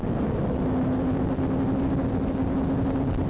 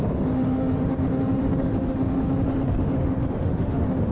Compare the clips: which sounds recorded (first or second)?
first